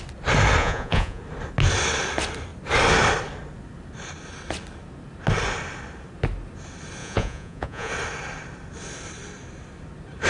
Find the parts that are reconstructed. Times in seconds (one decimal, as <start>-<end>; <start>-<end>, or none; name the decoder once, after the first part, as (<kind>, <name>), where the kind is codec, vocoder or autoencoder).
0.6-1.2 (vocoder, Vocos); 7.0-7.9